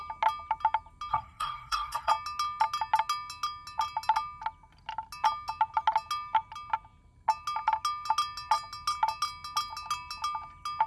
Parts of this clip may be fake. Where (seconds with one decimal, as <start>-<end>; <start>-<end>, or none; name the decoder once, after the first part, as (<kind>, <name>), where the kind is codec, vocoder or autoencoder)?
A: 1.1-2.1 (codec, SNAC)

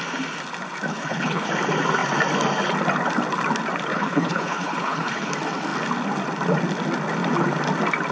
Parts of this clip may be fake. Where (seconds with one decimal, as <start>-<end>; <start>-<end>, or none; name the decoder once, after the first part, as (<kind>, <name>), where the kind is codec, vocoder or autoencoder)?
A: 0.9-1.5 (codec, HILCodec); 3.9-5.3

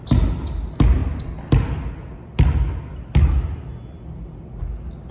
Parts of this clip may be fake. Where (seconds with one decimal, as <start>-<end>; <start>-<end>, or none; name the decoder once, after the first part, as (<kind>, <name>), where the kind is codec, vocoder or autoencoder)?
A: none